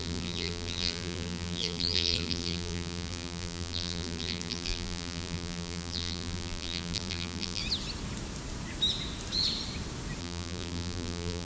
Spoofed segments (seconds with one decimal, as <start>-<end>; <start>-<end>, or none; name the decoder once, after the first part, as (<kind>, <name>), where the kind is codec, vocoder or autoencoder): 0.0-7.6 (vocoder, BigVGAN v2); 10.2-11.4

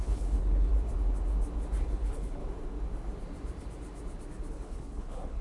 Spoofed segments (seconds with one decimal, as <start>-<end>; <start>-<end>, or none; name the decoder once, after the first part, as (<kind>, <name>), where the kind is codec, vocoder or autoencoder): 0.0-0.7 (codec, HILCodec); 1.8-2.4; 4.5-5.4

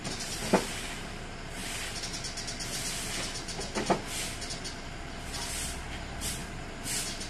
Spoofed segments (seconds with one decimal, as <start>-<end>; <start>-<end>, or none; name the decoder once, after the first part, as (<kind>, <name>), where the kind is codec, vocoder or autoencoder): 0.0-0.4 (vocoder, BigVGAN v2); 1.0-1.6; 6.0-6.4

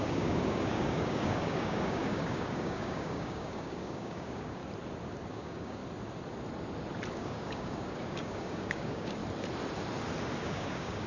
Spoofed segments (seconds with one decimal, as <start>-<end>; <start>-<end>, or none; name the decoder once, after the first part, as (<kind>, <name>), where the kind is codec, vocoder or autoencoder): 0.0-4.6 (codec, DAC); 5.3-5.8; 7.1-9.2; 10.4-11.1

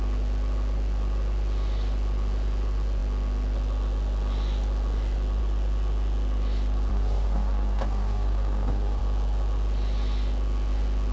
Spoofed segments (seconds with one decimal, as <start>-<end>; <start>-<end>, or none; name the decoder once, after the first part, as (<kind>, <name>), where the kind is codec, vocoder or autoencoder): 6.9-9.0 (codec, SNAC)

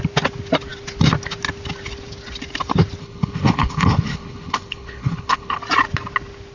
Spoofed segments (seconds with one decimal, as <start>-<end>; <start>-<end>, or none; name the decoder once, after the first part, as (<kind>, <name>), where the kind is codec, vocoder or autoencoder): 3.0-5.6 (codec, HILCodec)